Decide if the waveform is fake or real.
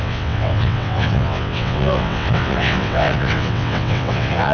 fake